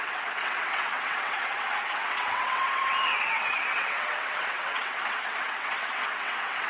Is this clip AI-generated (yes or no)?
yes